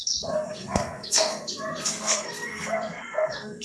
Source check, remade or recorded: remade